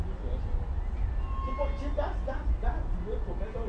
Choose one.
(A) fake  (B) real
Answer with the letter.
B